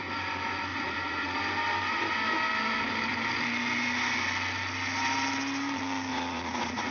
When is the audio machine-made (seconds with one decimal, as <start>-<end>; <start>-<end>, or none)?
0.7-1.4; 6.1-6.9